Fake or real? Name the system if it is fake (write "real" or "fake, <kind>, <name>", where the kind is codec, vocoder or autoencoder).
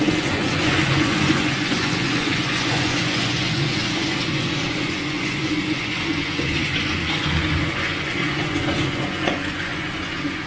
fake, vocoder, Vocos